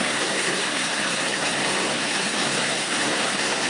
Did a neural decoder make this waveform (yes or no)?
yes